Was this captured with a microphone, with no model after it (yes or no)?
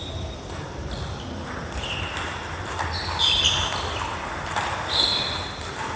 yes